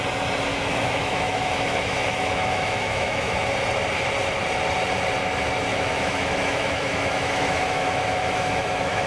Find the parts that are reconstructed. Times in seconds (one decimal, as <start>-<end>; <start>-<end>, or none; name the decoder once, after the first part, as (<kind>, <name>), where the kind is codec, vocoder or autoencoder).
0.5-3.5 (autoencoder, DAC-VAE); 5.7-9.1